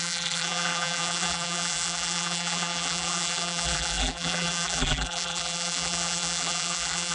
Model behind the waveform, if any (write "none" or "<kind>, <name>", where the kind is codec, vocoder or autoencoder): vocoder, BigVGAN v2